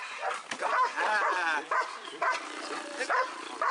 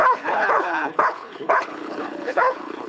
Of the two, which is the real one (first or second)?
first